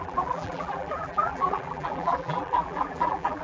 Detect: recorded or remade remade